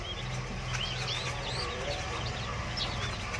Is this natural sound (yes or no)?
yes